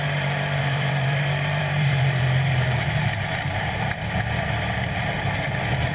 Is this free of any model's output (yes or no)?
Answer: no